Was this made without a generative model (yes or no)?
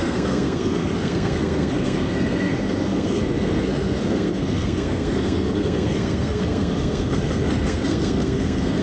no